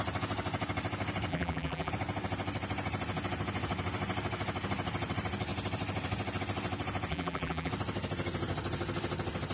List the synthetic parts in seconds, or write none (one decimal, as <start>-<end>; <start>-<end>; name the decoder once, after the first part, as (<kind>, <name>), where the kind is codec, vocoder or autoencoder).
1.3-1.9 (vocoder, BigVGAN v2); 7.1-7.7